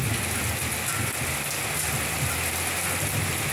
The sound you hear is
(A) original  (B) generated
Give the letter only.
A